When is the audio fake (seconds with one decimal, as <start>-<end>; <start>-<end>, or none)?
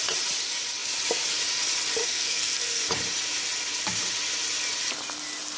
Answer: 2.0-2.9